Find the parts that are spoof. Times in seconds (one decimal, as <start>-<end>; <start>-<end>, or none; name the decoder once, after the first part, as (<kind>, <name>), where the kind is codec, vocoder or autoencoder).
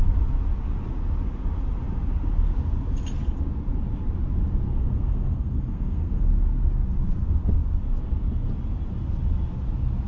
4.7-6.2 (codec, SNAC)